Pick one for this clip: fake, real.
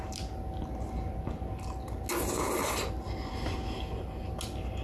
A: real